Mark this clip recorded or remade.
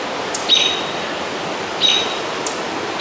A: recorded